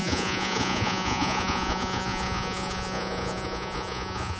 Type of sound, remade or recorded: remade